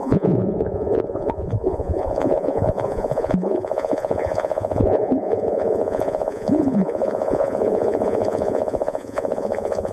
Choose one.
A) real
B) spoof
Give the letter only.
B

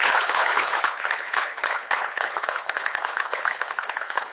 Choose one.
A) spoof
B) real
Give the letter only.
A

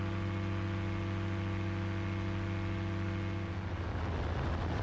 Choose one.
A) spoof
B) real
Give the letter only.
B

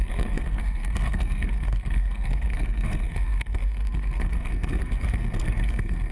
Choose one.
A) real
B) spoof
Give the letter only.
B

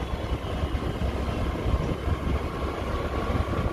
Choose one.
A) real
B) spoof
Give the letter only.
A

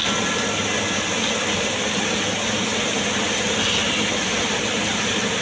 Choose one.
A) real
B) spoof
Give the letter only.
A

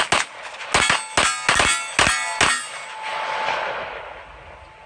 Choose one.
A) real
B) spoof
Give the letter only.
A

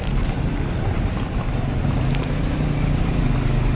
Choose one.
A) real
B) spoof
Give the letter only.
A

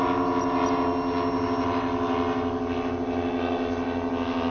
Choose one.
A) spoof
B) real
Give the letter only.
B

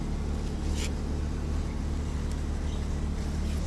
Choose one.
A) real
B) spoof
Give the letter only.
A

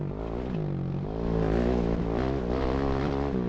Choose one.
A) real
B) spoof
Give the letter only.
A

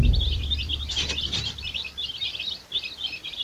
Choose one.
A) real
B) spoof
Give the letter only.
B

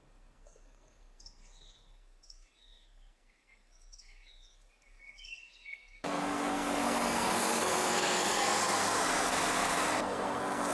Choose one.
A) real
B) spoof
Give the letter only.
B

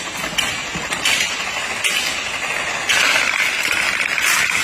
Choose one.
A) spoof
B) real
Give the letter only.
B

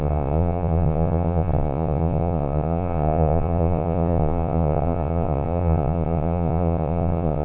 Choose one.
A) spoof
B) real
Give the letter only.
A